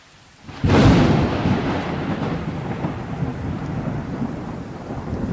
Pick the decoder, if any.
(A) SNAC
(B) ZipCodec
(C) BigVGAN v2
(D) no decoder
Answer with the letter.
C